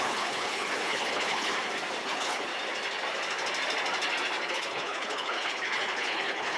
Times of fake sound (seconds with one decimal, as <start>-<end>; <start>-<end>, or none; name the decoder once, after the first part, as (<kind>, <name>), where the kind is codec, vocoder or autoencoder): 0.0-1.5 (codec, HILCodec); 2.0-2.5; 4.5-6.6